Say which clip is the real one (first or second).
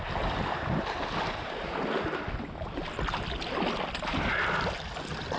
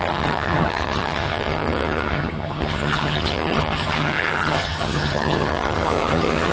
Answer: first